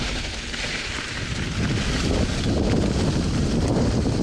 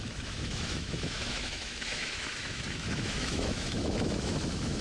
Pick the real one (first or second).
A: first